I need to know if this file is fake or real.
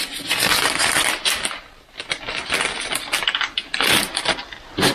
real